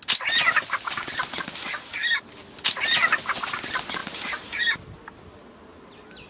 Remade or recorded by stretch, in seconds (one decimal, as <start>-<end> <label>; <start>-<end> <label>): 0.0-4.0 recorded; 4.0-4.6 remade; 4.6-6.3 recorded